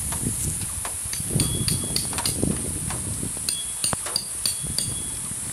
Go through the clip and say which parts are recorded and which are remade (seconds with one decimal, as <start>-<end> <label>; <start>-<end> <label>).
0.0-1.5 recorded; 1.5-2.5 remade; 2.5-5.5 recorded